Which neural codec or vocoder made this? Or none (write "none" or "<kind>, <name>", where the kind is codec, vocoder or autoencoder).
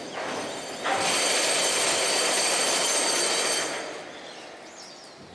none